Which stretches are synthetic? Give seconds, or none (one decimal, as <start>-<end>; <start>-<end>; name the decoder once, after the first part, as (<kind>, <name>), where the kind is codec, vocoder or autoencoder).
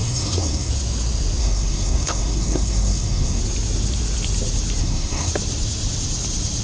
0.0-0.7 (codec, SNAC); 1.4-3.4; 4.8-5.3